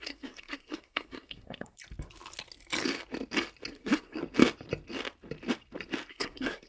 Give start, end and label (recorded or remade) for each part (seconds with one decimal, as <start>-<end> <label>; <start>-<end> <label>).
0.0-1.8 remade; 1.8-3.7 recorded; 3.7-4.2 remade; 4.2-6.1 recorded; 6.1-6.7 remade